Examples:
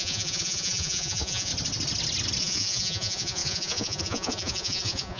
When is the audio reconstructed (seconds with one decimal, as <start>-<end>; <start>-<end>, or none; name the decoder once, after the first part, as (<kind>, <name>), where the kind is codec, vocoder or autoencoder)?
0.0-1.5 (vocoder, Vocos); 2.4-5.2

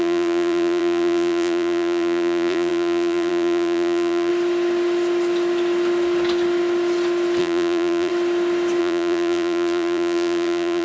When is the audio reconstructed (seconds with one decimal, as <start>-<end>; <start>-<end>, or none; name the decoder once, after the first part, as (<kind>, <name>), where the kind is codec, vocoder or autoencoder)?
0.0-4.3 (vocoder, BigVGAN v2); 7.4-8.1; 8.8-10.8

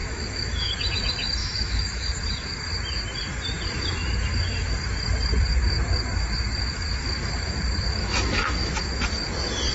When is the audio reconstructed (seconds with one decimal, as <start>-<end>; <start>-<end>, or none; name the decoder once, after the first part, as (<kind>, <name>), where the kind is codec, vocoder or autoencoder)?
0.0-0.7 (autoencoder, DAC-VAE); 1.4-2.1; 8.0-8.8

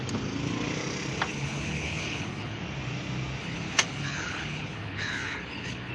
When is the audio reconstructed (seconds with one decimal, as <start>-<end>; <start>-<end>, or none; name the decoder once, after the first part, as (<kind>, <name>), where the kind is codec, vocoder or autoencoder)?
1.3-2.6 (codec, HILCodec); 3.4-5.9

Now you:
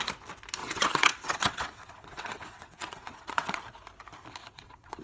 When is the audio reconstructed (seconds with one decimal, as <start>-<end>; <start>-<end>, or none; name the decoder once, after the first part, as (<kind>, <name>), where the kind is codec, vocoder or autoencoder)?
0.6-3.6 (vocoder, WaveNeXt); 4.4-5.0

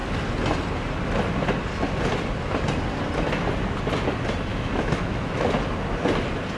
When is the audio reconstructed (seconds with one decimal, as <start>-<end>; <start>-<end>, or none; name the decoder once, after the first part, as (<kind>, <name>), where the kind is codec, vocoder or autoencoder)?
4.5-5.5 (autoencoder, DAC-VAE)

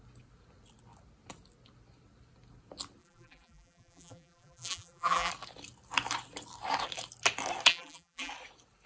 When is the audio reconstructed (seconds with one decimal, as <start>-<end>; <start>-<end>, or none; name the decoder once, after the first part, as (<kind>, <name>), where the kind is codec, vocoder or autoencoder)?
3.0-5.3 (vocoder, BigVGAN v2); 7.7-8.3

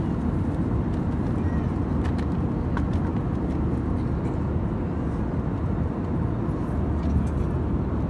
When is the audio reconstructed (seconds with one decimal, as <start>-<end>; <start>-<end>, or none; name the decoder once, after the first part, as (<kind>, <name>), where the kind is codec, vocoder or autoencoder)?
none